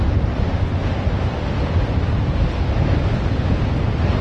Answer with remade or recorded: recorded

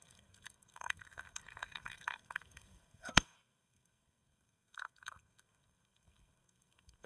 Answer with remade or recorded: remade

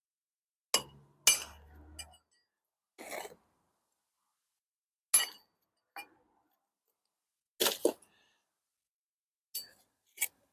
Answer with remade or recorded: recorded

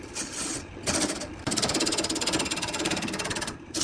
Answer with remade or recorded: recorded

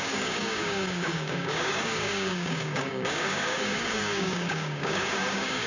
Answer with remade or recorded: remade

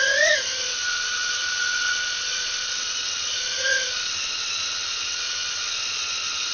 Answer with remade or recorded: remade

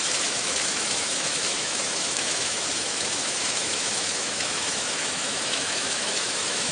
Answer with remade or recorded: remade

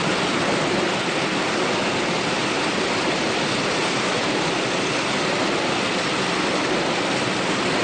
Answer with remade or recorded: recorded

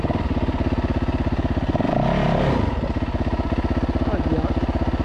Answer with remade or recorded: recorded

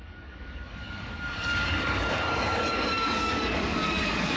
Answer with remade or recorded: remade